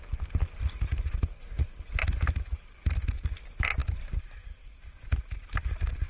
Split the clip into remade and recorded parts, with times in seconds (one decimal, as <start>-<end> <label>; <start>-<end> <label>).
0.0-3.8 recorded; 3.8-5.3 remade; 5.3-6.1 recorded